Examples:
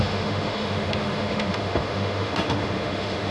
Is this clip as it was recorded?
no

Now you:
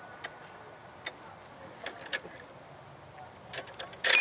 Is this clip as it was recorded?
yes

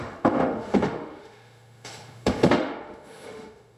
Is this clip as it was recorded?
no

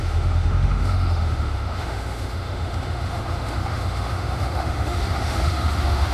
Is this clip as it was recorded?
no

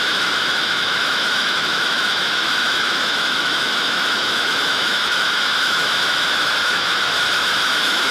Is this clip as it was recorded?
no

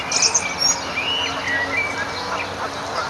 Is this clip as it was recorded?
yes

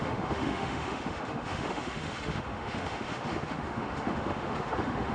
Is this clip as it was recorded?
no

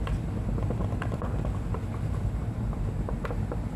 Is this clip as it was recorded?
yes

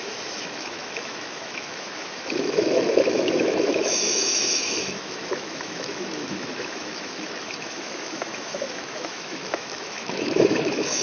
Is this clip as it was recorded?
no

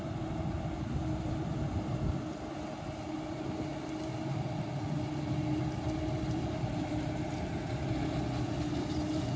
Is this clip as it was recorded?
yes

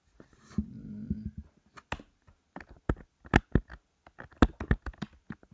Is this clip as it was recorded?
yes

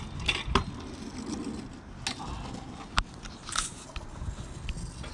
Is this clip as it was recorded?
yes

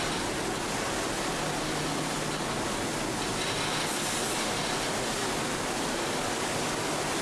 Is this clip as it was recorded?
yes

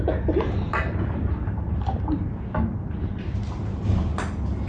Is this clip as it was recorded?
yes